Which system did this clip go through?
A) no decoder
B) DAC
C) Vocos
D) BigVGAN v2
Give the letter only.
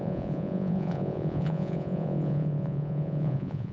C